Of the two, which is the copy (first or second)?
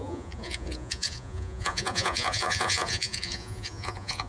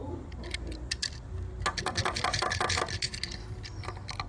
first